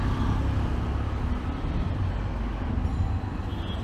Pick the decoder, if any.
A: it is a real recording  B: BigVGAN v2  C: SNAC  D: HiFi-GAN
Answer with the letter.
A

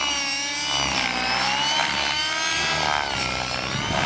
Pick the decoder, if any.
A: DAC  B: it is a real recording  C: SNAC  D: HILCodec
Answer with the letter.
B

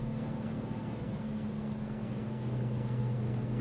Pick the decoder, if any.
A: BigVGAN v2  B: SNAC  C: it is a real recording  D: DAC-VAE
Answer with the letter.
B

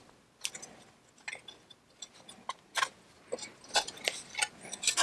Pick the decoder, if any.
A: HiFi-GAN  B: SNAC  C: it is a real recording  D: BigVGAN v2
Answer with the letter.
C